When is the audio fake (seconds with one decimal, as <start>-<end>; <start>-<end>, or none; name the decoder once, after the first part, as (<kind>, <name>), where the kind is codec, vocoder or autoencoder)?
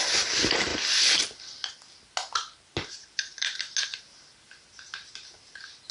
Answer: none